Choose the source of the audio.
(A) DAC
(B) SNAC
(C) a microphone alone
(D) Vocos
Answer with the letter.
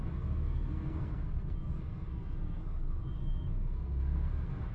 B